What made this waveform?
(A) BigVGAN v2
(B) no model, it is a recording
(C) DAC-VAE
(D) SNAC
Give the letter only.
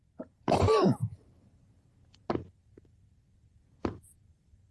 B